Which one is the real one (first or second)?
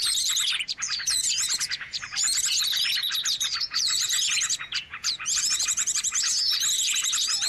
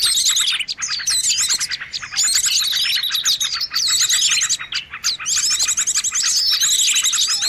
second